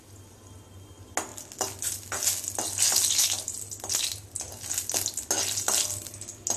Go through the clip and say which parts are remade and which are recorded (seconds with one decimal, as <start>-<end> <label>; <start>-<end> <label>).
0.0-6.6 recorded